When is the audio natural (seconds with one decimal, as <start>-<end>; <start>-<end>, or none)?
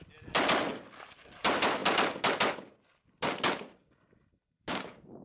0.0-5.2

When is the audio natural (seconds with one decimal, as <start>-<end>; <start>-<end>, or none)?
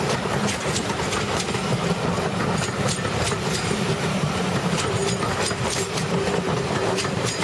1.6-3.2; 5.0-5.7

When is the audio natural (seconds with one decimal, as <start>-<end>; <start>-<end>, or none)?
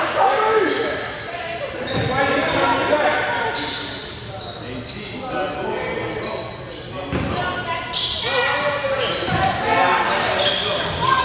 0.0-11.2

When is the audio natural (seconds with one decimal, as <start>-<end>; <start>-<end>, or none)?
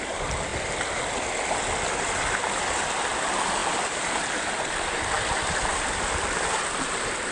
0.0-0.5; 1.3-3.6; 6.6-7.3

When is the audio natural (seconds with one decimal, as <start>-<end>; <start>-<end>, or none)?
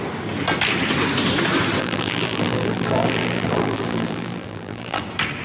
0.0-1.8; 5.0-5.4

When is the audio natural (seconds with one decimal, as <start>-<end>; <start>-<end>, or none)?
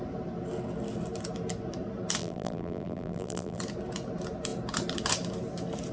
0.0-2.2; 3.6-5.9